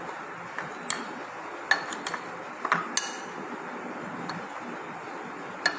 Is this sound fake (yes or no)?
no